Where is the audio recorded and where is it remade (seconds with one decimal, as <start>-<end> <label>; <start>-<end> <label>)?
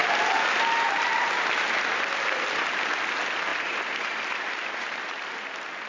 0.0-3.5 recorded; 3.5-5.1 remade; 5.1-5.9 recorded